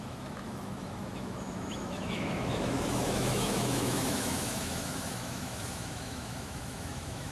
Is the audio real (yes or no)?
no